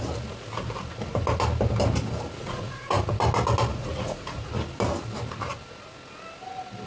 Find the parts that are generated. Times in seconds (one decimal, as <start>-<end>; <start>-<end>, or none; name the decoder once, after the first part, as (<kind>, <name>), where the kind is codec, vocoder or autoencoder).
2.4-3.2 (vocoder, Vocos); 3.7-4.5